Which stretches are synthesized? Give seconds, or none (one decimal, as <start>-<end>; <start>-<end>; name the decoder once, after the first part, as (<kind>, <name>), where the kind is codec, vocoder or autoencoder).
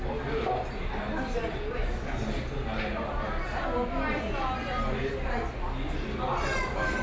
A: none